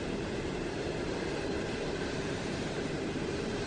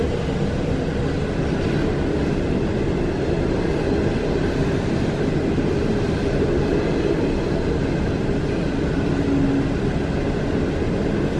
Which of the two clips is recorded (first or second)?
second